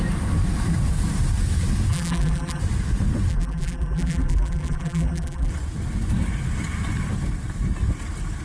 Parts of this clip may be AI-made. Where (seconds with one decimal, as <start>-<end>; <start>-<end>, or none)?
1.9-2.6; 3.3-5.5